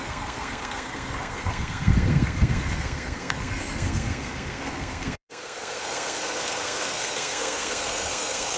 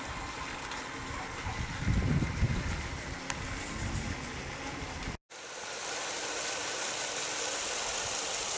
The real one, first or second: second